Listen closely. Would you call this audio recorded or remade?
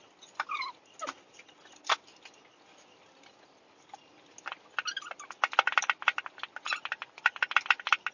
recorded